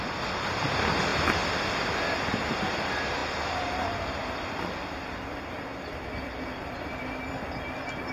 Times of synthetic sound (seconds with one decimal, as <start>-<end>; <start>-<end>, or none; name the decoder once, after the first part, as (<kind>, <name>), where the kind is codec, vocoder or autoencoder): none